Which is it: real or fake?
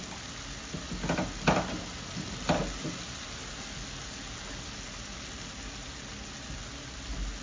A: real